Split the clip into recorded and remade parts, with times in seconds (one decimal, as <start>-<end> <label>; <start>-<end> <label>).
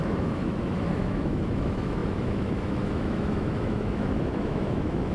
0.0-5.1 remade